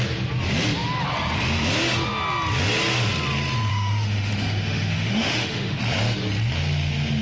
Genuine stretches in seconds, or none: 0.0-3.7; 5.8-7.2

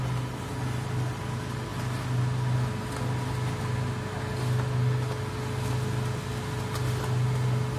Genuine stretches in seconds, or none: 0.0-7.8

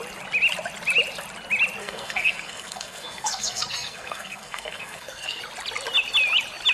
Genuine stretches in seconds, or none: 0.0-1.8; 5.4-6.7